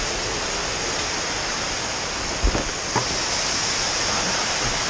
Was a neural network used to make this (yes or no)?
no